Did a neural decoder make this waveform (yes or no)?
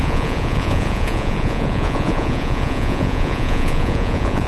yes